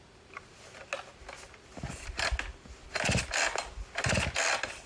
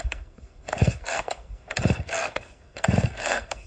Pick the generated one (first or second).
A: second